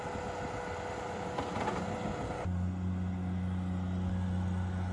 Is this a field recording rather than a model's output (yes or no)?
yes